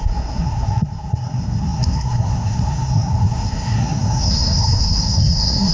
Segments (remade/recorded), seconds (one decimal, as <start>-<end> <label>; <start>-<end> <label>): 0.0-5.7 remade